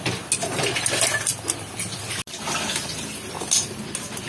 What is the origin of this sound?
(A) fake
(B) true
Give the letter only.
B